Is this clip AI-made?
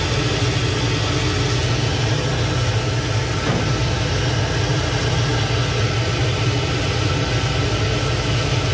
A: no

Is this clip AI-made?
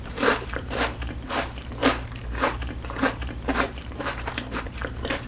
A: yes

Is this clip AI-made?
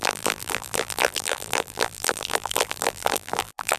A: yes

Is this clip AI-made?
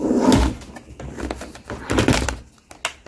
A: no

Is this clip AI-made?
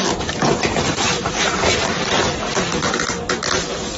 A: no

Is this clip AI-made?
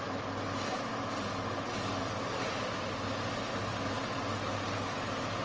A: no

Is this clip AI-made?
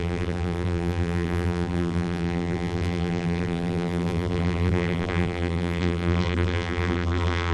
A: yes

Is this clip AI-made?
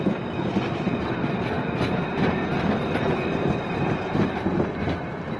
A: yes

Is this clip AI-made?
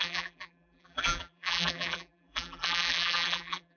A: yes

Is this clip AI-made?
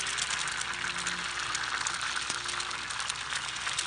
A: no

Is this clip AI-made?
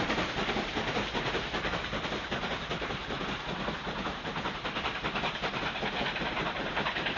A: yes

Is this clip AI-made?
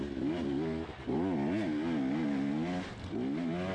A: no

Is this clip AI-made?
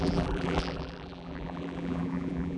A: yes